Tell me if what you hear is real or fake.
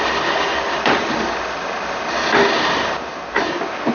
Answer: real